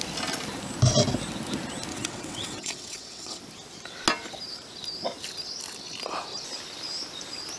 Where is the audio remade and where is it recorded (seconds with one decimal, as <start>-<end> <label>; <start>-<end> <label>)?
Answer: 0.0-1.9 recorded; 1.9-3.4 remade; 3.4-7.6 recorded